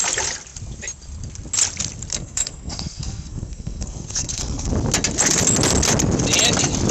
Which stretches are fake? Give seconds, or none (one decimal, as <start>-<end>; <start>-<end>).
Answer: 2.1-4.7